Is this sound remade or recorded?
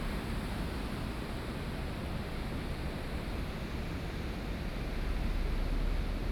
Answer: recorded